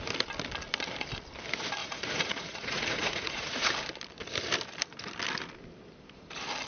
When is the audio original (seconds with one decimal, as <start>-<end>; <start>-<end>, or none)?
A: 0.0-1.8; 3.7-6.7